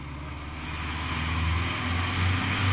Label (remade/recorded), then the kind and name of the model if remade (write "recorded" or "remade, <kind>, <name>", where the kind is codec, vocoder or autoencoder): recorded